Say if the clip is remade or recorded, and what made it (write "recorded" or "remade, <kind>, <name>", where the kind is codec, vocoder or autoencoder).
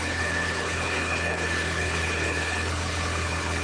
remade, codec, HILCodec